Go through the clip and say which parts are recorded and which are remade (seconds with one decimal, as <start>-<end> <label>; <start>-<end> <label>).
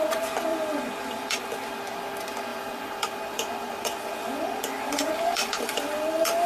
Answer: 0.0-0.5 recorded; 0.5-1.4 remade; 1.4-2.5 recorded; 2.5-6.5 remade